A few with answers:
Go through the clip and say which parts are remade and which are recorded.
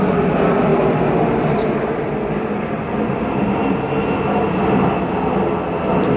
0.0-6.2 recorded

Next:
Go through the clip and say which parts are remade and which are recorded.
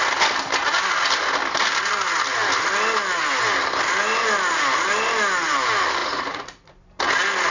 0.0-6.0 recorded; 6.0-6.7 remade; 6.7-7.5 recorded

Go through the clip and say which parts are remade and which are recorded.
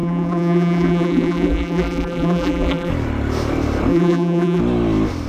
0.0-2.9 remade; 2.9-3.9 recorded; 3.9-4.6 remade; 4.6-5.3 recorded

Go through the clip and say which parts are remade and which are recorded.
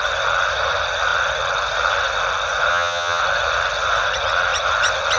0.0-2.7 recorded; 2.7-3.2 remade; 3.2-5.2 recorded